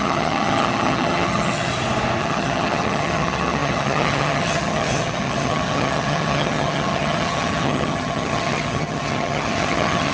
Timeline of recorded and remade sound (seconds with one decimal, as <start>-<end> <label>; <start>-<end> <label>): 0.0-1.7 remade; 1.7-2.2 recorded; 2.2-10.1 remade